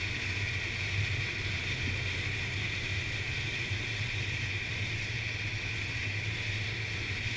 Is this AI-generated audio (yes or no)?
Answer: no